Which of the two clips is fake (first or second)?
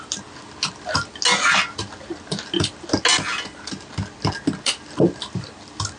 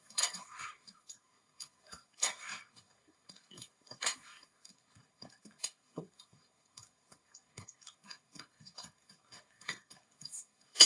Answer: second